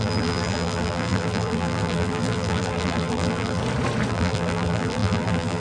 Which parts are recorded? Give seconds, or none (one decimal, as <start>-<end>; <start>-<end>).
3.6-4.1